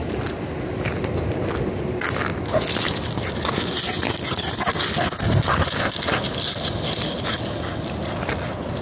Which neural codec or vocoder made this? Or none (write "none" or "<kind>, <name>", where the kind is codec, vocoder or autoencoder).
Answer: none